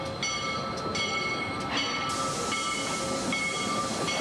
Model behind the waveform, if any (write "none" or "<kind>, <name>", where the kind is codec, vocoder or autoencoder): none